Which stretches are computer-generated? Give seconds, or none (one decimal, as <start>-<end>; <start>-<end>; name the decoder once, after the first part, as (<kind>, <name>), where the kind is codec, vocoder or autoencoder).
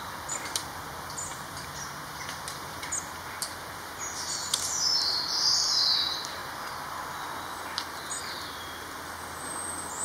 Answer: none